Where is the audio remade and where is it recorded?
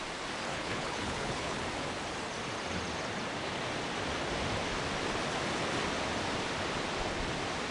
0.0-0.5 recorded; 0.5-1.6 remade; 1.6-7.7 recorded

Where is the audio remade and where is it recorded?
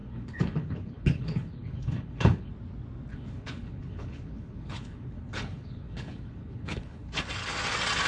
0.0-2.5 remade; 2.5-3.1 recorded; 3.1-7.2 remade; 7.2-8.1 recorded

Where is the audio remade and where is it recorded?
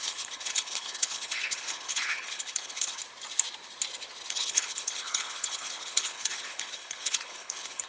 0.0-3.0 remade; 3.0-4.3 recorded; 4.3-7.9 remade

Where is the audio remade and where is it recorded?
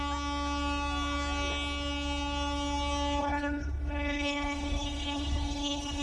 0.0-3.2 recorded; 3.2-6.0 remade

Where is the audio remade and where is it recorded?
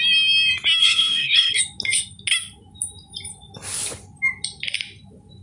0.0-0.8 recorded; 0.8-1.6 remade; 1.6-5.4 recorded